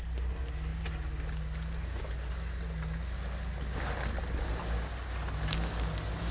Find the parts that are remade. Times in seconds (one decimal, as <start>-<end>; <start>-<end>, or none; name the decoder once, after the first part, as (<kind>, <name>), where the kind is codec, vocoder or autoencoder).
none